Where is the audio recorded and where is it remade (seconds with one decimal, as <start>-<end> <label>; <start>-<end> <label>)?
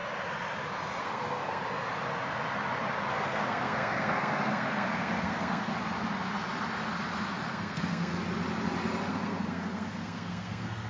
0.0-1.0 recorded; 1.0-1.6 remade; 1.6-3.1 recorded; 3.1-5.7 remade; 5.7-7.5 recorded; 7.5-8.1 remade; 8.1-9.1 recorded; 9.1-10.9 remade